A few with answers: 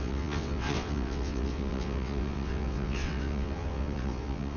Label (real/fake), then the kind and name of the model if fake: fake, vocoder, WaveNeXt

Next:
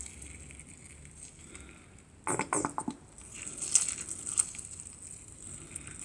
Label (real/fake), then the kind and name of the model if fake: real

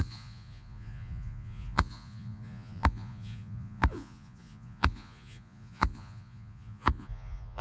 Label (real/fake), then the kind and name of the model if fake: fake, vocoder, Vocos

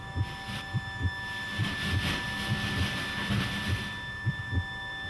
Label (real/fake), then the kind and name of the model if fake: real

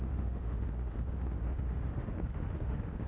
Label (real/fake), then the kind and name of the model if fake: fake, autoencoder, DAC-VAE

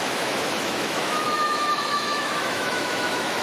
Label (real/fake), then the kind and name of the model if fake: fake, autoencoder, DAC-VAE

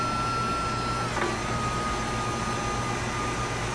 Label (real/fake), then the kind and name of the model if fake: real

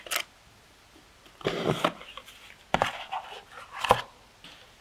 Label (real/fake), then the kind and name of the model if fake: real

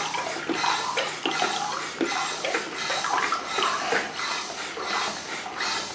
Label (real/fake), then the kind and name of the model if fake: real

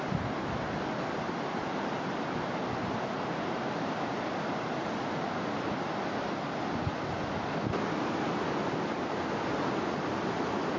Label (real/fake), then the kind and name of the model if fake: real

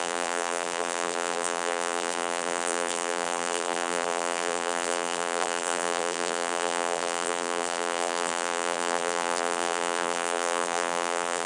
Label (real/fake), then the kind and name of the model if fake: fake, vocoder, BigVGAN v2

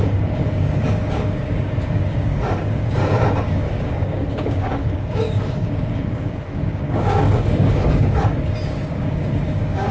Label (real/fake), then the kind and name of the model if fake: fake, codec, DAC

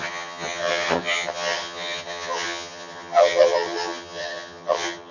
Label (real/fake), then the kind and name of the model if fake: fake, vocoder, HiFi-GAN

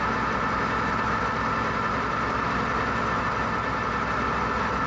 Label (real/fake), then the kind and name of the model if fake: real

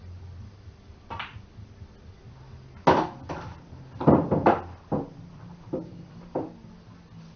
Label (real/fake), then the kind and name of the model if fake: real